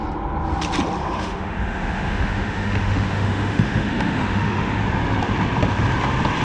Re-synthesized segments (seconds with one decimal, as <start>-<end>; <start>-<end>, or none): 1.0-4.8